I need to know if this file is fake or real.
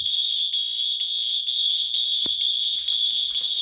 real